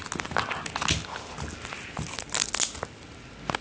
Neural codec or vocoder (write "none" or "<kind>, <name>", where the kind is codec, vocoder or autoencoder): none